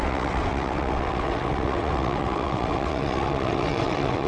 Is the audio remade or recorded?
remade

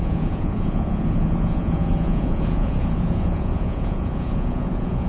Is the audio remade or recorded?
remade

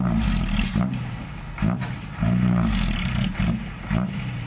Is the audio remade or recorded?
remade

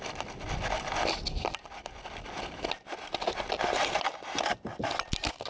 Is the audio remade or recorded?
recorded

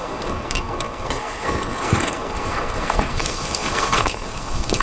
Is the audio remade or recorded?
remade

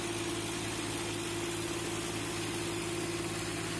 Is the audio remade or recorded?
recorded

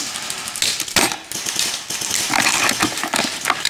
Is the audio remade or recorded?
recorded